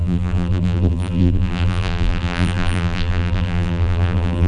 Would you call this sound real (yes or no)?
no